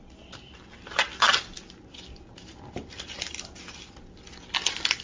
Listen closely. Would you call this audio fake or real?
real